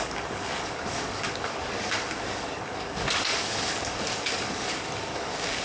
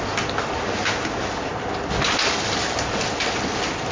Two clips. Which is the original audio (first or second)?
second